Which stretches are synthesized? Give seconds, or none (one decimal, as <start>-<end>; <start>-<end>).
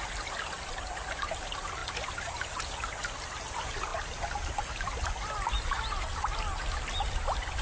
0.0-7.6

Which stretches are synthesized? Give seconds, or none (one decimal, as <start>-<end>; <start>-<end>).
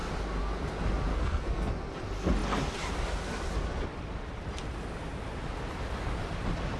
1.1-1.7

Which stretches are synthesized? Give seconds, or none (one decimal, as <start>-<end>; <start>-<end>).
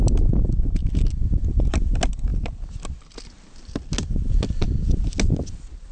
none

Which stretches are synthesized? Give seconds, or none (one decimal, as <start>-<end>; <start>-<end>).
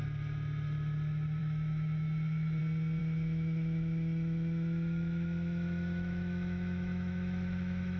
1.4-2.6; 3.0-8.0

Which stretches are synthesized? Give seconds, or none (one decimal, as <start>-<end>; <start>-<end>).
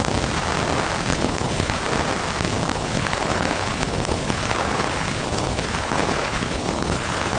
1.1-1.8; 2.7-7.4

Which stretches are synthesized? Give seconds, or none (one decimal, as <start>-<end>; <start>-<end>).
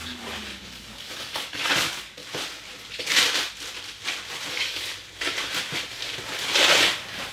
0.0-2.2; 4.5-4.9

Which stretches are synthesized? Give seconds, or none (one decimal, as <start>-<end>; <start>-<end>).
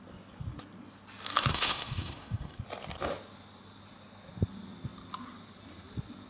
1.5-2.6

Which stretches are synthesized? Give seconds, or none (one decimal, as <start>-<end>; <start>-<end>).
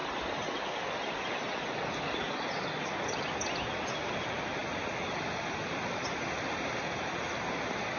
none